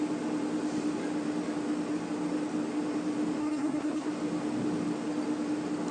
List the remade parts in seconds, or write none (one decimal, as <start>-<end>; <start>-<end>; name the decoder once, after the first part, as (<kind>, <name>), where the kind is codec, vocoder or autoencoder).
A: 3.4-4.1 (codec, SNAC)